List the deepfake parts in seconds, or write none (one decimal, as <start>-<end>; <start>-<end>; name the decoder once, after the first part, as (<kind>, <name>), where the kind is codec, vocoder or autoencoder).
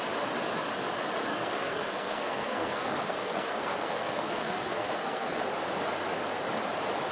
1.3-5.4 (codec, SNAC)